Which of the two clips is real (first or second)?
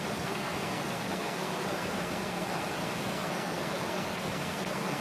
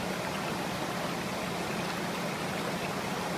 second